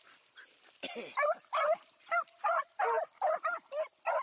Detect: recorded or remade recorded